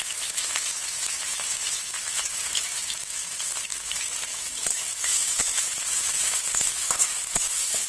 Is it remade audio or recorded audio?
remade